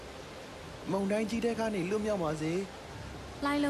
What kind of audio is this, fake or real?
real